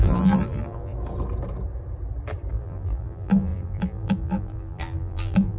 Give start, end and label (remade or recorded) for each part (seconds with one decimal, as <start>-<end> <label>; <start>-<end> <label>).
0.0-0.9 remade; 0.9-2.5 recorded; 2.5-5.6 remade

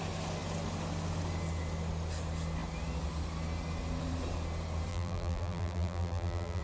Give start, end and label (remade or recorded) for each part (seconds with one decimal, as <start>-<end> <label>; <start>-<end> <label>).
0.0-4.9 recorded; 4.9-6.6 remade

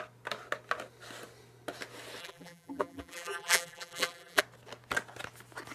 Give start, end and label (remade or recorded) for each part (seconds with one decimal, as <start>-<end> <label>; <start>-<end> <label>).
0.0-2.2 recorded; 2.2-4.4 remade; 4.4-5.7 recorded

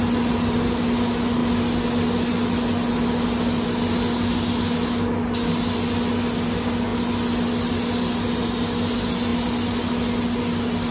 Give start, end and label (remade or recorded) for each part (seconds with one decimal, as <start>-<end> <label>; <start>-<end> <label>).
0.0-10.9 recorded